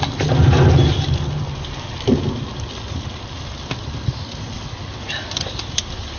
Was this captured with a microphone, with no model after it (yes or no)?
yes